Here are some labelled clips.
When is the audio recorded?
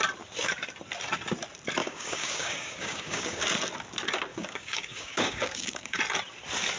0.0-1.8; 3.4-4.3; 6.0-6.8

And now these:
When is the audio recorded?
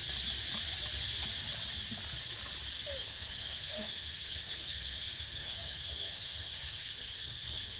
0.0-3.0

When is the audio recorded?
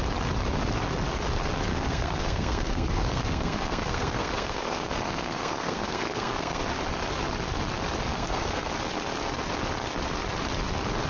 0.0-1.7; 6.6-8.1; 8.7-11.1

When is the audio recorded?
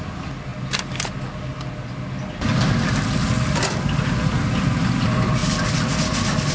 0.0-6.5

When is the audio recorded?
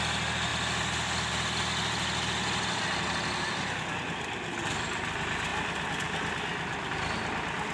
0.0-7.7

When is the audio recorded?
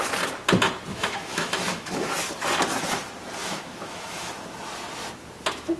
0.0-0.9; 2.1-3.4; 4.3-5.8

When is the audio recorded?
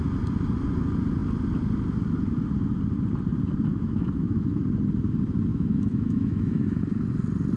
0.0-3.7; 4.6-5.5; 6.8-7.6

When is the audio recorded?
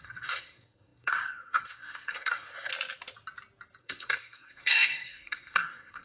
2.7-3.8